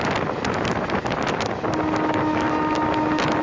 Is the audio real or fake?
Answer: real